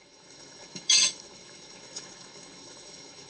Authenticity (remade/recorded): remade